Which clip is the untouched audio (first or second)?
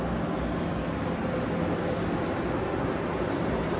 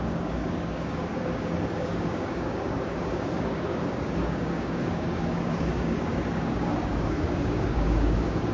first